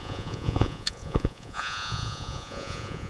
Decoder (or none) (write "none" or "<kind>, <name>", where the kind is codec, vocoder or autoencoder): vocoder, Vocos